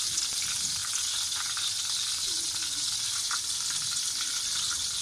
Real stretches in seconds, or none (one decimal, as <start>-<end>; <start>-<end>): 0.0-5.0